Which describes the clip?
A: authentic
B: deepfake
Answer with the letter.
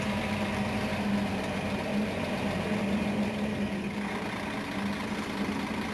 A